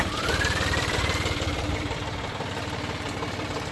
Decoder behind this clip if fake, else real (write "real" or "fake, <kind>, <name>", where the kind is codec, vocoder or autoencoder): fake, vocoder, BigVGAN v2